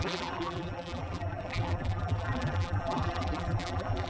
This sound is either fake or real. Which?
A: fake